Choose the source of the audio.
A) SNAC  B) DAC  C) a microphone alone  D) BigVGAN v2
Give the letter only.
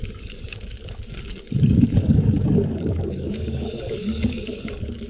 B